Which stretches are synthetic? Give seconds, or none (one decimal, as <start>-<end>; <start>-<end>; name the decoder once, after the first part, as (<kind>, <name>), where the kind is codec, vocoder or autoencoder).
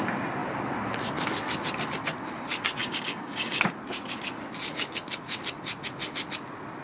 2.8-3.6 (codec, DAC)